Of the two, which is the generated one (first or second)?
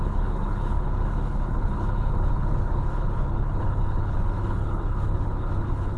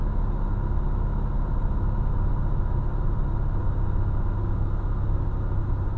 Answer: first